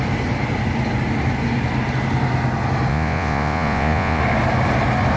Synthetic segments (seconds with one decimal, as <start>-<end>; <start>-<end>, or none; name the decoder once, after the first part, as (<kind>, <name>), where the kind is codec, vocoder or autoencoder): 2.9-4.2 (vocoder, Vocos)